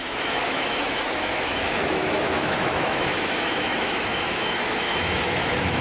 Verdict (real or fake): fake